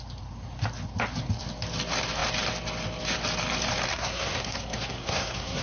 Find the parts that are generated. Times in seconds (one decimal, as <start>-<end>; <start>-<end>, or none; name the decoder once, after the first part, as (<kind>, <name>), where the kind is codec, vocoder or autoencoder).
3.9-5.6 (codec, SNAC)